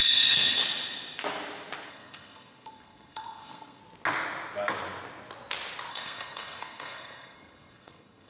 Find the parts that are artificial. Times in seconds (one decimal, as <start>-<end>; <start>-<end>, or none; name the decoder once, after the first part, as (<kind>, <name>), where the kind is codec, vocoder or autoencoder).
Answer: 0.0-0.6 (codec, SNAC); 1.9-3.8; 5.9-8.3